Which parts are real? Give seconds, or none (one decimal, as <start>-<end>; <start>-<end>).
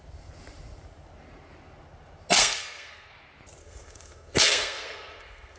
0.0-2.4; 3.1-3.6